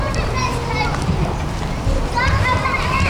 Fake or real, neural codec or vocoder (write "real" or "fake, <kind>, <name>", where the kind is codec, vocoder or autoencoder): real